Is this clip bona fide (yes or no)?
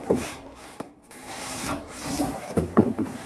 no